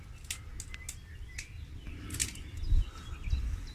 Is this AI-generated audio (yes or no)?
no